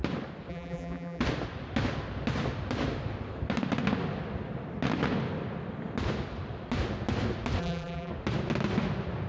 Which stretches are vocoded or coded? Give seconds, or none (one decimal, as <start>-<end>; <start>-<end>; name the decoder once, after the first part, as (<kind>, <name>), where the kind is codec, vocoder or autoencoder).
0.5-1.2 (vocoder, BigVGAN v2); 7.6-8.1